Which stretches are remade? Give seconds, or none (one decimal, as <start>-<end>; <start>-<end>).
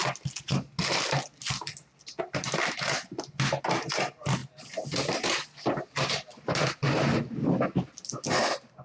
none